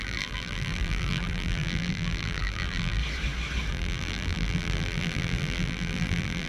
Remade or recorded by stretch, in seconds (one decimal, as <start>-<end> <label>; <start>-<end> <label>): 0.0-3.0 remade; 3.0-3.7 recorded; 3.7-6.5 remade